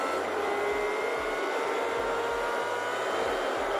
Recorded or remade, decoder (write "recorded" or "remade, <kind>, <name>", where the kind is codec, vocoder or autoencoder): recorded